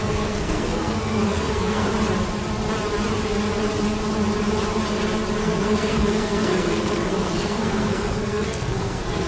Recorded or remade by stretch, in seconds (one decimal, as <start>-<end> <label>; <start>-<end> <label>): 0.0-1.9 remade; 1.9-5.4 recorded; 5.4-9.3 remade